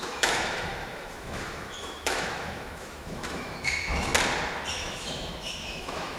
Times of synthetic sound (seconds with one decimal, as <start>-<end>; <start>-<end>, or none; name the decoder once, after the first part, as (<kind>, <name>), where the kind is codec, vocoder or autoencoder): 0.0-4.1 (autoencoder, DAC-VAE); 4.7-6.2